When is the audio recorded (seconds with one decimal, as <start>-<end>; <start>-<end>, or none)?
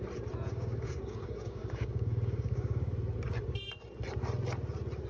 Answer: 0.0-0.5; 2.9-5.1